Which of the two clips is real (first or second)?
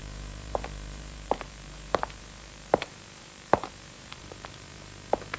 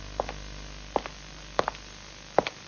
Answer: second